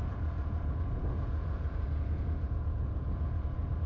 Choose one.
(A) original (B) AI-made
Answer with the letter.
B